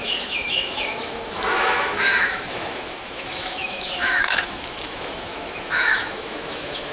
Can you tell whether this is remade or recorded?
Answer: remade